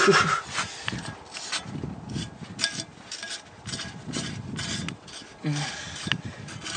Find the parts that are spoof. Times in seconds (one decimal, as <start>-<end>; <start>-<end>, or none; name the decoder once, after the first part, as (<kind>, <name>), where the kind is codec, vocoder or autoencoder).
none